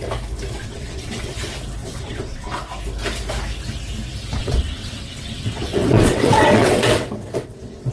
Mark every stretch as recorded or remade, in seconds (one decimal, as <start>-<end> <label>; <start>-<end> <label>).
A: 0.0-0.6 recorded; 0.6-1.3 remade; 1.3-1.8 recorded; 1.8-2.6 remade; 2.6-4.4 recorded; 4.4-7.9 remade